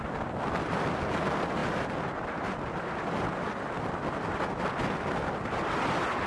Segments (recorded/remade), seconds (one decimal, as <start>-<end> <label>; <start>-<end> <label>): 0.0-6.3 recorded